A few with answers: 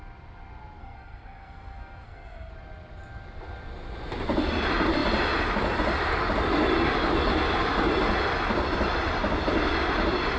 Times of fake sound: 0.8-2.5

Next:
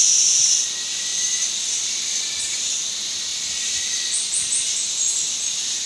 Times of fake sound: none

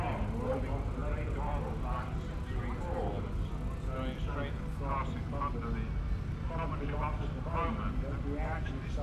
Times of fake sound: none

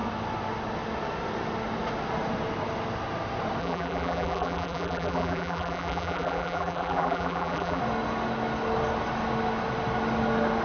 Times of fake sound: 3.6-7.8

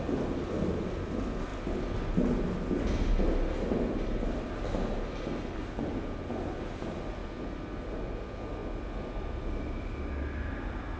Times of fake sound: none

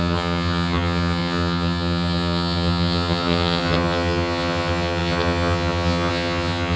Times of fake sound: 0.0-6.8

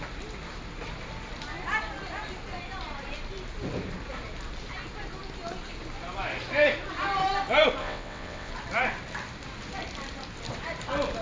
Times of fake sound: 7.8-8.5